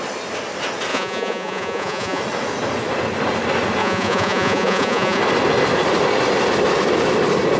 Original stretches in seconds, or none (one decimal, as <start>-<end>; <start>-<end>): 0.0-0.9; 2.2-3.8; 5.2-7.6